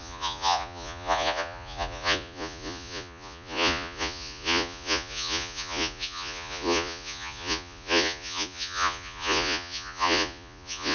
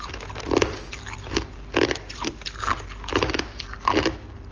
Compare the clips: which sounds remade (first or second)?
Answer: first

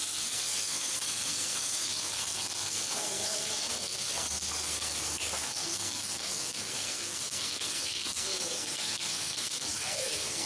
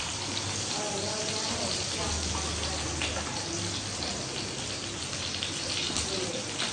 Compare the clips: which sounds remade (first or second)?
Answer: first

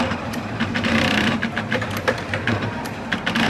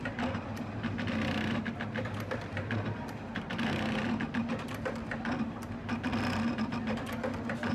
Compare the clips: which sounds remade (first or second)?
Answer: first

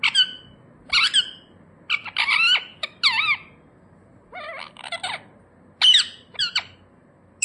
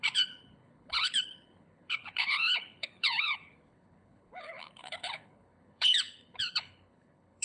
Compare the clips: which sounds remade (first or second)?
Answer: second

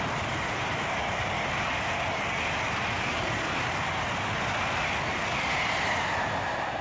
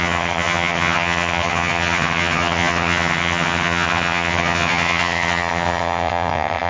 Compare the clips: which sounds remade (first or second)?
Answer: second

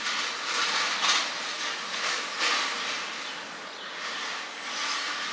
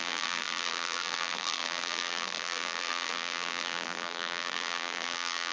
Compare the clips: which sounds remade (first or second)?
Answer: second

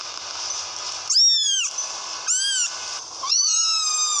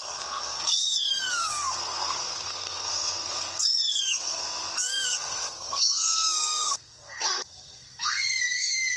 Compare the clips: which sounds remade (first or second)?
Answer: second